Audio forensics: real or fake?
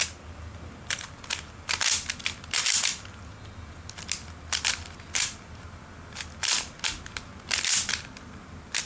real